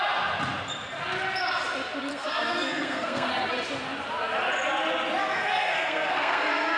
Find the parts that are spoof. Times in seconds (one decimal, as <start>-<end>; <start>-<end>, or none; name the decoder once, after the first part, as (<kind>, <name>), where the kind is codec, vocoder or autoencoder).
2.1-3.3 (codec, SNAC); 5.2-6.8